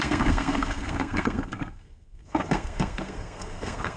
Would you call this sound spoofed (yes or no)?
yes